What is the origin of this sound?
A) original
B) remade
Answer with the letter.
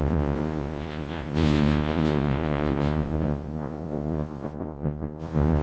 B